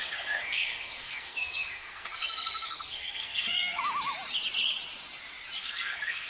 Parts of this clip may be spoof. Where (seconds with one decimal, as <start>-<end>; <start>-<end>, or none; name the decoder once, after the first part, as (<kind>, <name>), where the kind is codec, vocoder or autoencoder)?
0.0-3.8 (codec, SNAC); 5.6-6.3